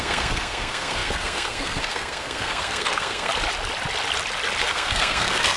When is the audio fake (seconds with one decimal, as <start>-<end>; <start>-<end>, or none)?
0.0-3.3; 4.6-5.6